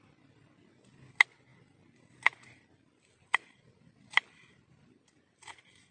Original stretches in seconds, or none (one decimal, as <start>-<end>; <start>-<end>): 0.0-5.9